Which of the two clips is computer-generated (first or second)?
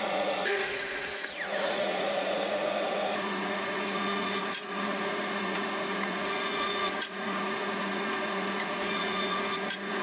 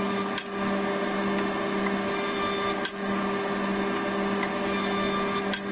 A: first